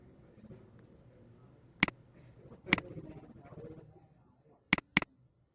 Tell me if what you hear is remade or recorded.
recorded